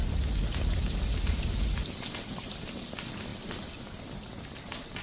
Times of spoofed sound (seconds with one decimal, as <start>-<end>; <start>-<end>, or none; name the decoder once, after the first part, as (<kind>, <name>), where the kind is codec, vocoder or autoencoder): none